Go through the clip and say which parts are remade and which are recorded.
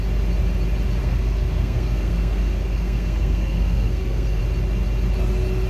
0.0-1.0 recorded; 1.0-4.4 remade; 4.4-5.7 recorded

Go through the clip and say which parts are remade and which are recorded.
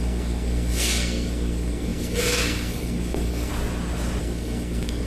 0.0-3.5 remade; 3.5-4.2 recorded; 4.2-5.1 remade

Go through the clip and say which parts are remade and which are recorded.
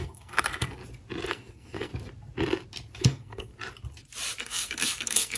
0.0-0.8 remade; 0.8-1.3 recorded; 1.3-1.9 remade; 1.9-3.0 recorded; 3.0-3.5 remade; 3.5-4.4 recorded; 4.4-5.4 remade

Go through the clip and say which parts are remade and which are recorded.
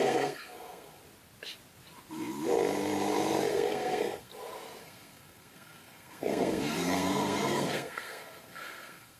0.0-1.0 remade; 1.0-3.5 recorded; 3.5-4.3 remade; 4.3-4.8 recorded; 4.8-9.2 remade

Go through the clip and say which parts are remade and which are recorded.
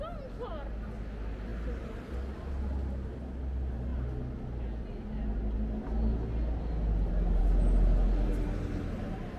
0.0-9.4 recorded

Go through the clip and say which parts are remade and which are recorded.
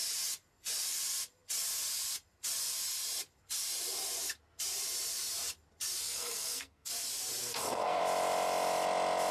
0.0-6.0 recorded; 6.0-6.9 remade; 6.9-7.4 recorded; 7.4-8.0 remade; 8.0-9.3 recorded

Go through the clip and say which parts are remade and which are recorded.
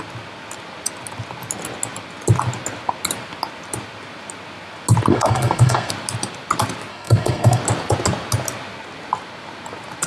0.0-5.1 recorded; 5.1-5.9 remade; 5.9-6.9 recorded; 6.9-7.6 remade; 7.6-10.1 recorded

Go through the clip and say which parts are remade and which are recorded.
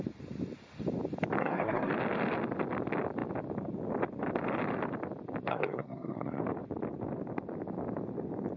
0.0-1.4 recorded; 1.4-1.9 remade; 1.9-5.5 recorded; 5.5-6.4 remade; 6.4-8.6 recorded